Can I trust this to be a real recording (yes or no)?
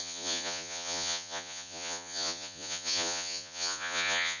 no